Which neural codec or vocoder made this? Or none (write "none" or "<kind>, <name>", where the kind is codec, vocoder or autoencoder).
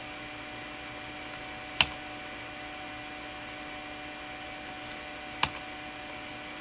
none